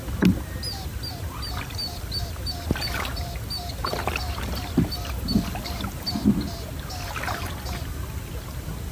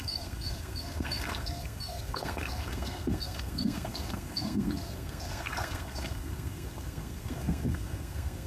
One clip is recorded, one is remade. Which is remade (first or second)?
second